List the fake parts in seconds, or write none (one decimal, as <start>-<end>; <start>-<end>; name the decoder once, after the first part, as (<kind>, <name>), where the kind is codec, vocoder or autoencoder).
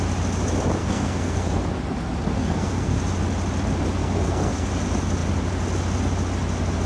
0.8-1.6 (codec, SNAC); 2.4-3.0; 4.0-4.7